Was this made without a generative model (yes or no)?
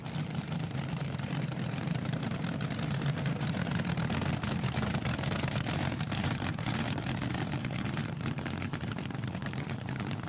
no